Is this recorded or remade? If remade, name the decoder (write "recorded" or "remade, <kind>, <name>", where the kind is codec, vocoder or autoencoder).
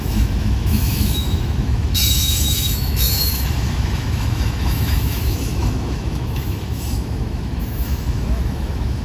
remade, autoencoder, DAC-VAE